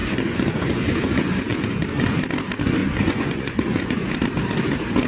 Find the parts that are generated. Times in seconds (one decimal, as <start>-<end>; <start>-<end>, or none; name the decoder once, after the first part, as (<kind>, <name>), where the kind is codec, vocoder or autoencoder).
0.0-2.2 (vocoder, Vocos); 2.8-4.1